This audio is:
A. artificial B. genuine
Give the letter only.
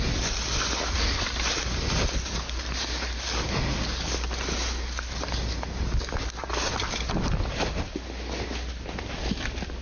B